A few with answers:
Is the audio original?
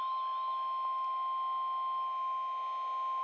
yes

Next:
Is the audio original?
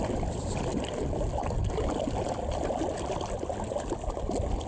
yes